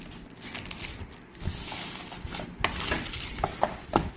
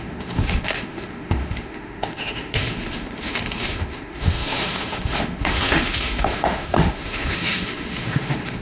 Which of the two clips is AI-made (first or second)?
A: second